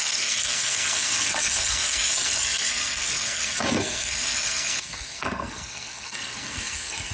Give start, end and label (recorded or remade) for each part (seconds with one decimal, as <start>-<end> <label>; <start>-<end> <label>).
0.0-7.1 remade